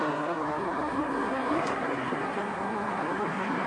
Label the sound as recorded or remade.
remade